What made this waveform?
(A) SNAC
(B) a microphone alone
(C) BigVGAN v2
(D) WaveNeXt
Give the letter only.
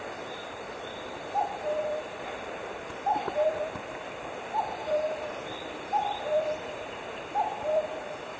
C